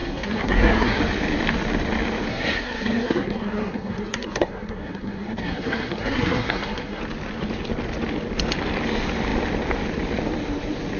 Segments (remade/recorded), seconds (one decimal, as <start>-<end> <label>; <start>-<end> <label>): 0.0-1.0 remade; 1.0-2.3 recorded; 2.3-7.0 remade; 7.0-11.0 recorded